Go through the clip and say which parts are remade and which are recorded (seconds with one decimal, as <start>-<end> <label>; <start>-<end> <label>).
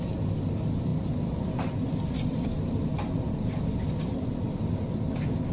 0.0-5.5 recorded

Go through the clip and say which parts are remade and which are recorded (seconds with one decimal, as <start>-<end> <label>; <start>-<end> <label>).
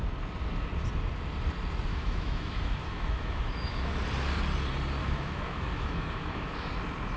0.0-1.9 recorded; 1.9-3.9 remade; 3.9-5.0 recorded; 5.0-6.7 remade; 6.7-7.2 recorded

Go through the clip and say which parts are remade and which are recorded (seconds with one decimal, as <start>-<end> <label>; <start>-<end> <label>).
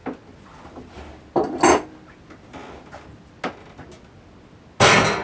0.0-5.2 recorded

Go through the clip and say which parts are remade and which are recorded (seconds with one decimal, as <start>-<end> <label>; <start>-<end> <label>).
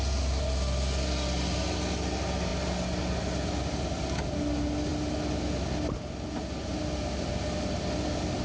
0.0-8.4 recorded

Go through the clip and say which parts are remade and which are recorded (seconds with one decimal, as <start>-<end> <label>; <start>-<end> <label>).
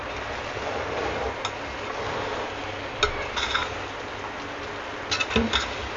0.0-6.0 recorded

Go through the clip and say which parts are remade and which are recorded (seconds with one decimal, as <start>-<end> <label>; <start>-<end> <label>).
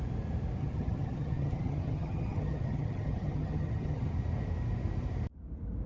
0.0-0.6 recorded; 0.6-4.1 remade; 4.1-5.9 recorded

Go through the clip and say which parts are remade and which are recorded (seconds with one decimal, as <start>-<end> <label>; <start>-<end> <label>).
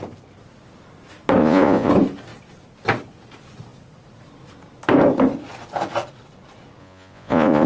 0.0-1.4 recorded; 1.4-1.9 remade; 1.9-6.8 recorded; 6.8-7.7 remade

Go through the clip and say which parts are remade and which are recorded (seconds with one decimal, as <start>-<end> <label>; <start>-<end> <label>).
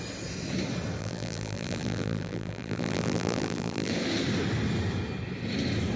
0.0-1.0 recorded; 1.0-3.9 remade; 3.9-6.0 recorded